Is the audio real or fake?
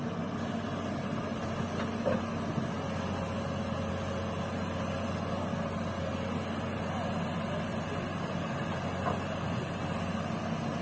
real